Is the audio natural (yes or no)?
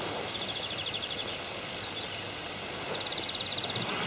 yes